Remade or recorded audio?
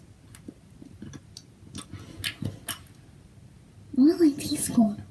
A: recorded